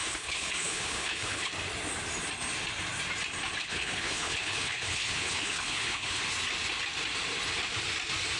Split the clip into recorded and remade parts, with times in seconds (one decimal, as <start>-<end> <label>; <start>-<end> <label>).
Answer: 0.0-1.5 remade; 1.5-3.6 recorded; 3.6-6.2 remade; 6.2-8.4 recorded